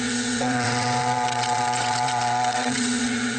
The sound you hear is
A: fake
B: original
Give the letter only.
A